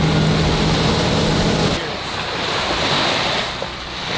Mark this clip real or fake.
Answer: real